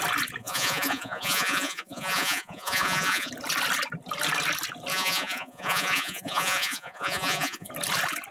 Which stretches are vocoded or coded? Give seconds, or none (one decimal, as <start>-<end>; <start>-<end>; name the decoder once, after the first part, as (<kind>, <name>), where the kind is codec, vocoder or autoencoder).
0.4-3.3 (vocoder, Vocos); 4.9-7.7